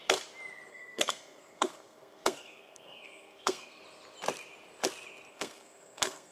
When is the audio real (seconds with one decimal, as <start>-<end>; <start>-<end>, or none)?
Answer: 0.0-0.7; 3.8-5.3